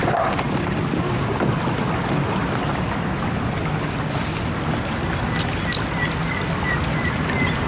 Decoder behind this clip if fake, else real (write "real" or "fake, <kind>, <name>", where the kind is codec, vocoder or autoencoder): real